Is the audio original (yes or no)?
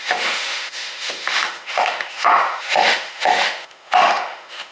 no